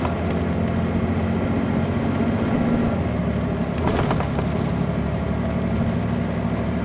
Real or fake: real